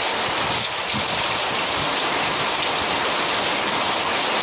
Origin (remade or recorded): recorded